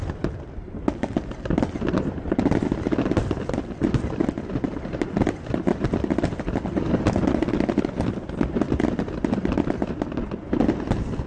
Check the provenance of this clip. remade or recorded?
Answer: recorded